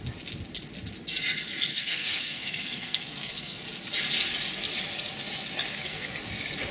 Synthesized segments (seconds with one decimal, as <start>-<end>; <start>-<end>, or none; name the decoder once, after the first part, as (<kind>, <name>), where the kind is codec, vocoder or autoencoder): 1.7-3.6 (codec, SNAC); 5.7-6.2